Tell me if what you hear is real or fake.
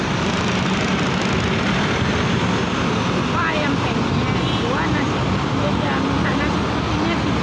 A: real